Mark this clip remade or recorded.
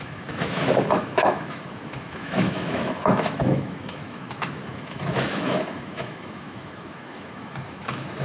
remade